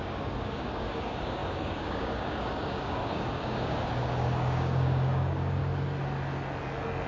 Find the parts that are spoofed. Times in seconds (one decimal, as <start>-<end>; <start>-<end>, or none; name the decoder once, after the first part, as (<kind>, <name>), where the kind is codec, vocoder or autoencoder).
0.0-5.6 (codec, DAC)